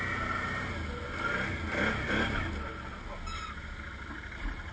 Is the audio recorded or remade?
recorded